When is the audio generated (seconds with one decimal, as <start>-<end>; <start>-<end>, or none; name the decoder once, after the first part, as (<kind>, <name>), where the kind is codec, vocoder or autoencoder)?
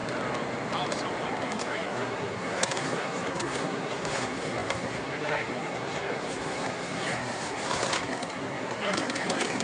1.3-9.6 (codec, SNAC)